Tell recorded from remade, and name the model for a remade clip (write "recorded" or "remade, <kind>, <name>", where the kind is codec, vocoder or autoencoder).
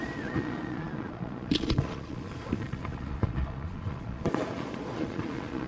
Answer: remade, vocoder, Vocos